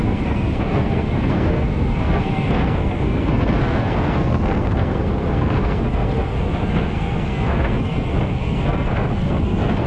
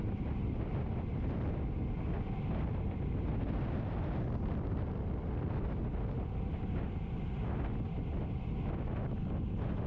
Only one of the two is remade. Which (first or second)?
first